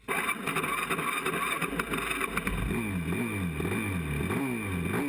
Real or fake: real